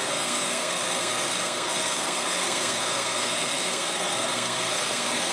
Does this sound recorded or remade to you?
remade